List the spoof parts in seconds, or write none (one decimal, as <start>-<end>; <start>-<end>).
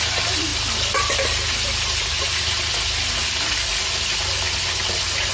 none